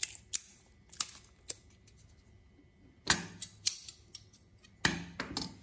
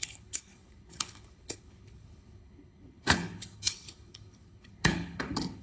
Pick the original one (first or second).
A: first